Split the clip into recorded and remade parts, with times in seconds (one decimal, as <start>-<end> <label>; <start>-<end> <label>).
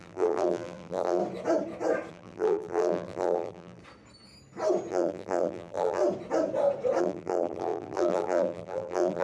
0.0-1.2 remade; 1.2-2.1 recorded; 2.1-3.8 remade; 3.8-4.9 recorded; 4.9-6.0 remade; 6.0-7.0 recorded; 7.0-9.2 remade